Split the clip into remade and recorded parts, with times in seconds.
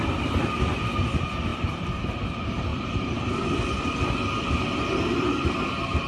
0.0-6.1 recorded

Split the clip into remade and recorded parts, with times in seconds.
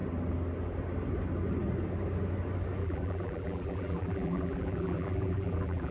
0.0-2.8 recorded; 2.8-5.9 remade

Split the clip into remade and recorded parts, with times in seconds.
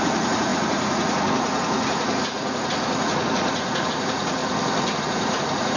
0.0-4.4 remade; 4.4-5.0 recorded; 5.0-5.8 remade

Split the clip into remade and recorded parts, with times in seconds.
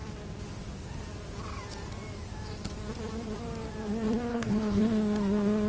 0.0-4.3 recorded; 4.3-4.8 remade; 4.8-5.7 recorded